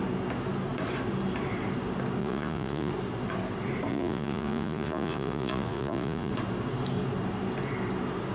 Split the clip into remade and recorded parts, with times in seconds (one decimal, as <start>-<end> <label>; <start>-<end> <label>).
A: 0.0-2.2 recorded; 2.2-2.9 remade; 2.9-3.9 recorded; 3.9-6.3 remade; 6.3-8.3 recorded

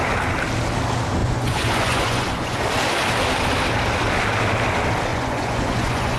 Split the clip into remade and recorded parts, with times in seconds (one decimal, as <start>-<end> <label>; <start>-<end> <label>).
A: 0.0-1.2 recorded; 1.2-2.6 remade; 2.6-5.1 recorded; 5.1-6.2 remade

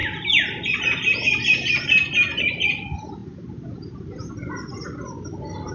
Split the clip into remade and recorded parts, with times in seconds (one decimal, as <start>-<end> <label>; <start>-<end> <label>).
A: 0.0-5.7 recorded

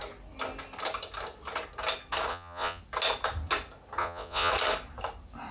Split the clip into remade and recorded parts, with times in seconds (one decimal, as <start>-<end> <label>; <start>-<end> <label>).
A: 0.0-2.3 recorded; 2.3-2.8 remade; 2.8-4.0 recorded; 4.0-4.5 remade; 4.5-5.5 recorded

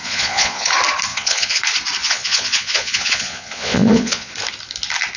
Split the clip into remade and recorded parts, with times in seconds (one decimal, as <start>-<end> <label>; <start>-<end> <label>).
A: 0.0-0.7 remade; 0.7-1.1 recorded; 1.1-1.6 remade; 1.6-2.0 recorded; 2.0-4.3 remade; 4.3-5.2 recorded